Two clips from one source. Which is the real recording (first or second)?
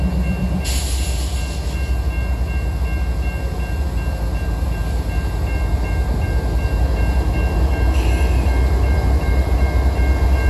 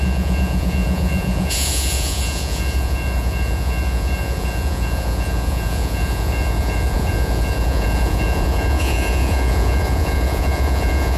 first